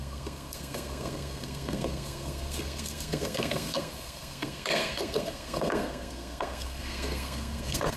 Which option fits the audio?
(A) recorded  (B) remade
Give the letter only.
B